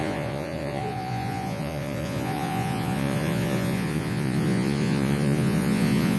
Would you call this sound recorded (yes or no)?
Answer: no